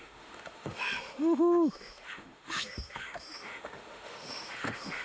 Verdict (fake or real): fake